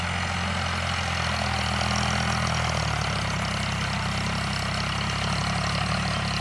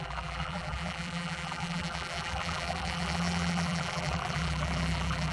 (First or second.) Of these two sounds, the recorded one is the first